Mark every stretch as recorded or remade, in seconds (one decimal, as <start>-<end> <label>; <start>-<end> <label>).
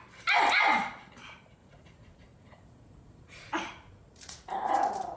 0.0-1.6 recorded; 1.6-4.7 remade; 4.7-5.2 recorded